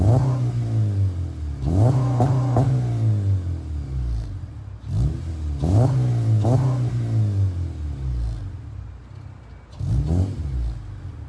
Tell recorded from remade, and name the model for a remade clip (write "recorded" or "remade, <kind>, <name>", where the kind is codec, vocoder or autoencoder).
recorded